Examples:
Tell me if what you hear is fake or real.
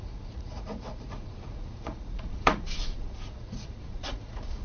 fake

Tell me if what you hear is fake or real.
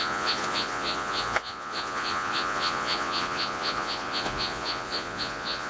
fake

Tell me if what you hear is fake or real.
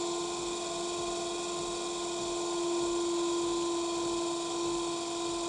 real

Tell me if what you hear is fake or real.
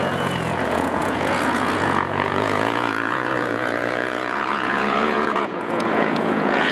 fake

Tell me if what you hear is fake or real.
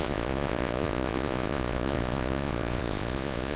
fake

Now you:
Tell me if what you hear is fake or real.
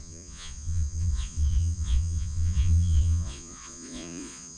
fake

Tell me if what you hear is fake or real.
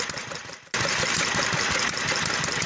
real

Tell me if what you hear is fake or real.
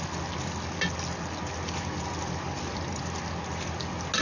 real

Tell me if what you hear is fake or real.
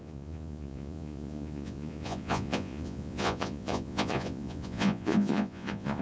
fake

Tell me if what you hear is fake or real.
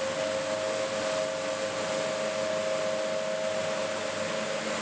real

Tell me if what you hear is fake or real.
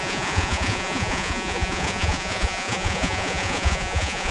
fake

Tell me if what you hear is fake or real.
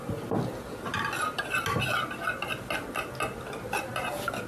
real